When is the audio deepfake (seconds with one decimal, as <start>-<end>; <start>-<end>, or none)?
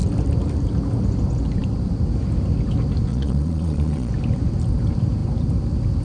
3.1-4.1